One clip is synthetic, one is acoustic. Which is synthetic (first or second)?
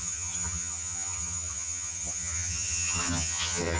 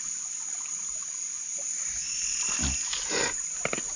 first